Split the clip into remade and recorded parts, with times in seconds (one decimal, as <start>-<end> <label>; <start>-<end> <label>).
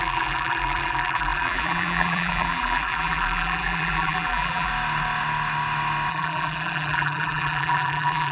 0.0-4.7 remade; 4.7-6.1 recorded; 6.1-8.3 remade